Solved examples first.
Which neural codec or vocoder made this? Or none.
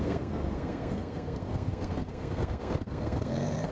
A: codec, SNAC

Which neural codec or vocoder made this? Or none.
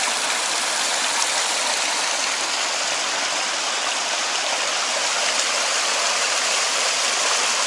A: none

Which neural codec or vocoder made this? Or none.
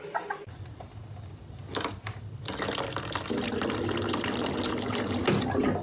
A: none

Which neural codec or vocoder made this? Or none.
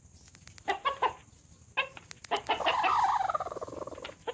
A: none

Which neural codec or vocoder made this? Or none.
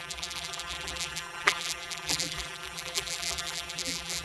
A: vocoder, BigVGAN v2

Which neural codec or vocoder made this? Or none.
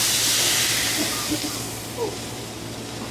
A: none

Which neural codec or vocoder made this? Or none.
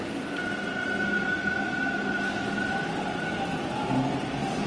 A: none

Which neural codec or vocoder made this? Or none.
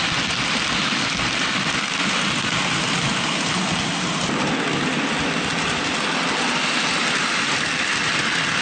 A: none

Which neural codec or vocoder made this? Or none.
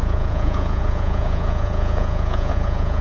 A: vocoder, Vocos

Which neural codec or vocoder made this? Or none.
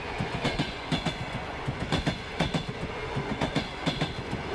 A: vocoder, Vocos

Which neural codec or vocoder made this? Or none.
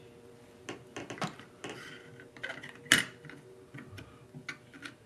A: none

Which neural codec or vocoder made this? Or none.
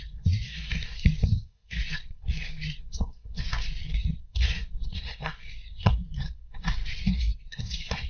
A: codec, SNAC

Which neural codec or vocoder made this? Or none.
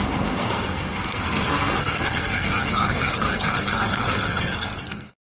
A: codec, SNAC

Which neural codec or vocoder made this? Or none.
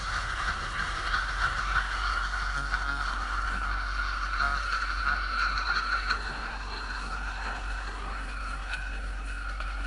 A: codec, SNAC